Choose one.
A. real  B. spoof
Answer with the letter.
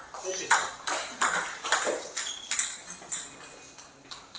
A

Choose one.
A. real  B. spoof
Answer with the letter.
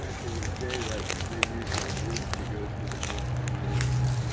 A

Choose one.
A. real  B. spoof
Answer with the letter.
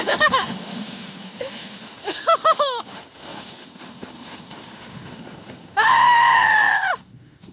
B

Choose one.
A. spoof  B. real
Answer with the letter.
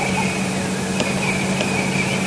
A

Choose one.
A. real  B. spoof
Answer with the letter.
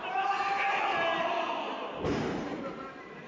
B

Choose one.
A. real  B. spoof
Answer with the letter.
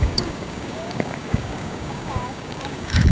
B